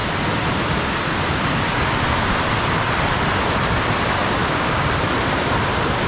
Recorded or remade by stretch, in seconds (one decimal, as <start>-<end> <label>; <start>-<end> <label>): 0.0-4.4 recorded; 4.4-4.9 remade; 4.9-6.1 recorded